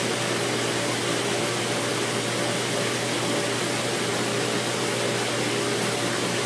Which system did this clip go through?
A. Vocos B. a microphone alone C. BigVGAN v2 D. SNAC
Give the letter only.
B